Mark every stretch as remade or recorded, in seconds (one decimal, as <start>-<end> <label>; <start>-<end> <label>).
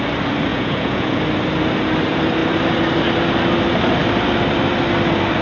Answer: 0.0-0.5 recorded; 0.5-1.2 remade; 1.2-5.4 recorded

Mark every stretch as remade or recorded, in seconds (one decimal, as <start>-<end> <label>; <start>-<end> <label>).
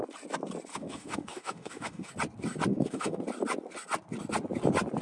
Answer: 0.0-0.7 recorded; 0.7-2.1 remade; 2.1-2.7 recorded; 2.7-3.2 remade; 3.2-5.0 recorded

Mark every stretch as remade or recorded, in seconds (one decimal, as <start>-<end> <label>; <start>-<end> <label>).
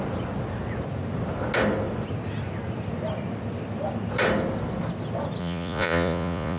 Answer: 0.0-5.4 recorded; 5.4-6.6 remade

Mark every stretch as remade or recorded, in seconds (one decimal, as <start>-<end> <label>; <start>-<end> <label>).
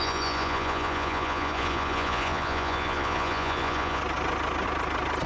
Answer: 0.0-4.0 remade; 4.0-5.3 recorded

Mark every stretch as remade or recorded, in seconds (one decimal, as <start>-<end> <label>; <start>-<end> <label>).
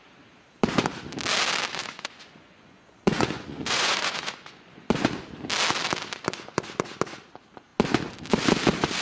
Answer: 0.0-1.8 recorded; 1.8-4.9 remade; 4.9-9.0 recorded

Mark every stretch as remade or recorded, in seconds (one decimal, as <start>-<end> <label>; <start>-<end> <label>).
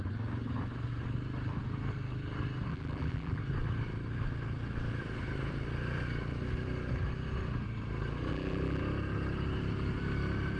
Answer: 0.0-2.7 recorded; 2.7-3.4 remade; 3.4-8.3 recorded; 8.3-8.8 remade; 8.8-10.6 recorded